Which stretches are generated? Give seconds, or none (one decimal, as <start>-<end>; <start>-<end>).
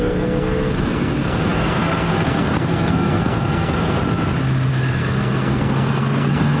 0.0-4.0; 4.7-6.6